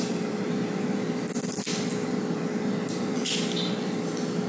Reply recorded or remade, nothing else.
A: recorded